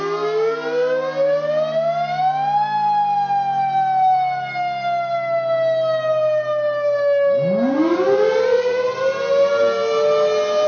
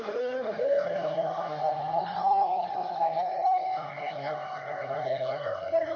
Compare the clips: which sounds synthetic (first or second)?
second